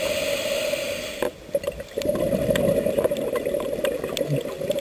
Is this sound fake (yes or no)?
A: no